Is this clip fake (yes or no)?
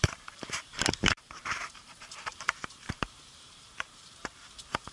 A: yes